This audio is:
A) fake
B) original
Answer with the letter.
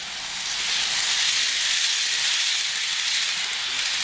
B